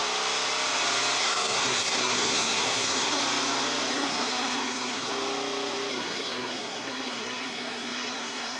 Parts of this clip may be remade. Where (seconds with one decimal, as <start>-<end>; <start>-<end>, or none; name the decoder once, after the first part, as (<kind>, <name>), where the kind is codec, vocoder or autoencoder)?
1.2-3.2 (codec, SNAC); 3.9-5.1; 5.9-8.6